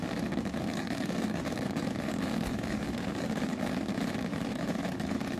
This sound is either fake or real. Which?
fake